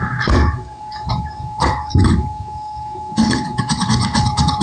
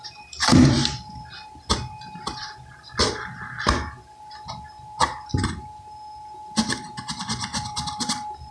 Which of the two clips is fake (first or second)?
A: first